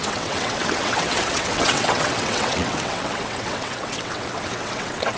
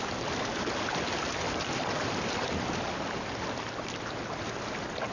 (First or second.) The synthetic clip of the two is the first